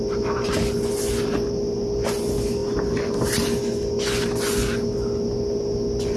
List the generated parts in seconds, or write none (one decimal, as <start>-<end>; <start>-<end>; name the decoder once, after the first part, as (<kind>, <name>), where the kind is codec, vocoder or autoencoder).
none